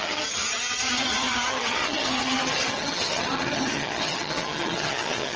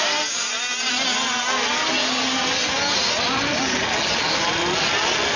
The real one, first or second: second